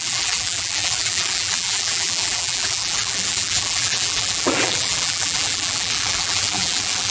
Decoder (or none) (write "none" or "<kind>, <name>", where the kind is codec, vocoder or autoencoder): vocoder, BigVGAN v2